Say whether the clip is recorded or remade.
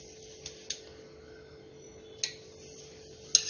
recorded